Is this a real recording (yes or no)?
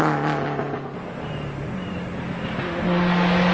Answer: yes